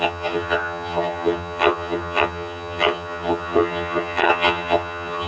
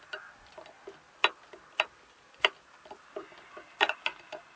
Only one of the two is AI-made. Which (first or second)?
first